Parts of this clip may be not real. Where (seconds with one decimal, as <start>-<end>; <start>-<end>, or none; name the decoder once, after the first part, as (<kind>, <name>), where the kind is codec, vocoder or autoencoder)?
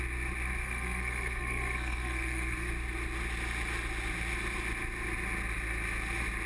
0.6-2.7 (codec, SNAC)